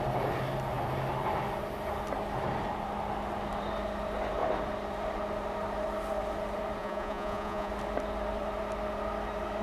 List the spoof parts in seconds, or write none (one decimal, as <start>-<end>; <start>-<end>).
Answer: 6.8-7.7